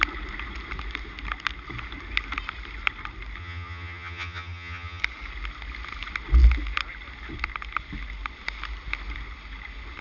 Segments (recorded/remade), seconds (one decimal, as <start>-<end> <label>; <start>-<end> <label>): 0.0-3.4 recorded; 3.4-5.0 remade; 5.0-10.0 recorded